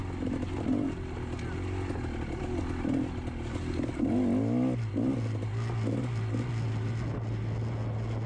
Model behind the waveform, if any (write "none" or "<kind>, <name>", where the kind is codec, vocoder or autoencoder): none